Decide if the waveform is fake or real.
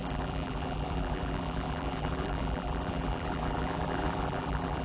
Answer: fake